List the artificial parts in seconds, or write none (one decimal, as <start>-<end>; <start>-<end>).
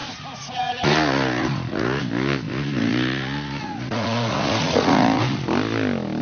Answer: 0.0-2.0; 2.5-5.4